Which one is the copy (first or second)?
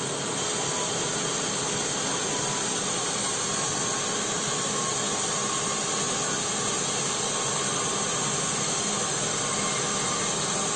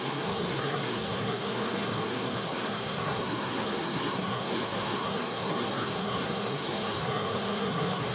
second